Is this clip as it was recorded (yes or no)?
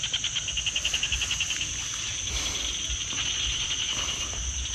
yes